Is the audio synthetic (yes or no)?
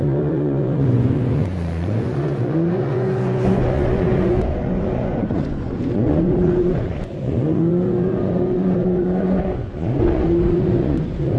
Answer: yes